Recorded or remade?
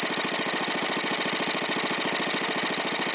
recorded